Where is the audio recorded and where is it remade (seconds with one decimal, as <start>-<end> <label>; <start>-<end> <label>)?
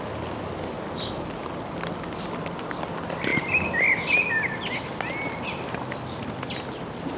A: 0.0-7.2 recorded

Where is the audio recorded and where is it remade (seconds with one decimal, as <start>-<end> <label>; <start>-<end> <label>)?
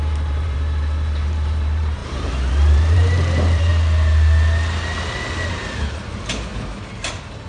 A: 0.0-3.7 remade; 3.7-5.5 recorded; 5.5-6.5 remade; 6.5-7.5 recorded